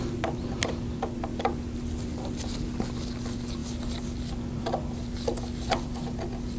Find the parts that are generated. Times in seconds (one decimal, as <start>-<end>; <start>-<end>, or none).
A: none